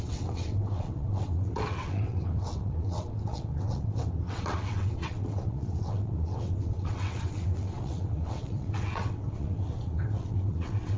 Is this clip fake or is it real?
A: fake